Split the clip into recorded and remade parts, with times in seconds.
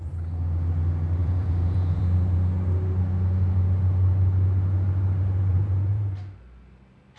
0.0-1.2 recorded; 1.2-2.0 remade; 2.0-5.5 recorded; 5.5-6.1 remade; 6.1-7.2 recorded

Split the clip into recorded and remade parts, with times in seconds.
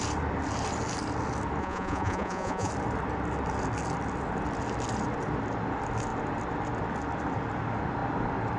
0.0-1.6 recorded; 1.6-2.7 remade; 2.7-8.6 recorded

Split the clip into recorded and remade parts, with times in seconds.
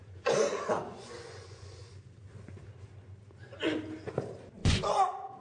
0.0-1.8 remade; 1.8-4.6 recorded; 4.6-5.4 remade